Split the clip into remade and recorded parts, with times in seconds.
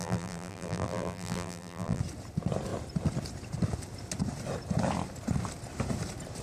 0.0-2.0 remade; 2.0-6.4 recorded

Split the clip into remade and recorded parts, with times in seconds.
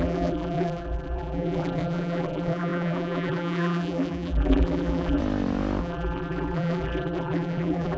0.0-5.2 remade; 5.2-5.8 recorded; 5.8-8.0 remade